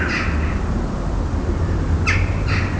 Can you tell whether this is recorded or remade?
remade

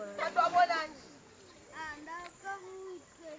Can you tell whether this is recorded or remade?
recorded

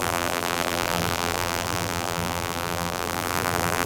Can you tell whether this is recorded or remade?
remade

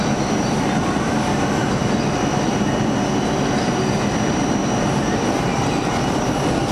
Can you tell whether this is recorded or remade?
recorded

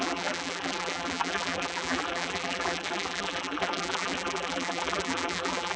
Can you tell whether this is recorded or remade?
remade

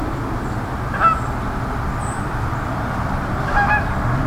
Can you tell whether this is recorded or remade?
recorded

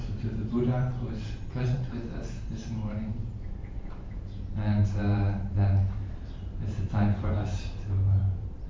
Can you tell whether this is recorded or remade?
remade